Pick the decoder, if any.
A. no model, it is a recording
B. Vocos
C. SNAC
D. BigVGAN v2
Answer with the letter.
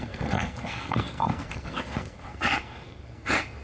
C